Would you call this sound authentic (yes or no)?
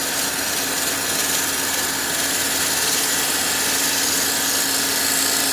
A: yes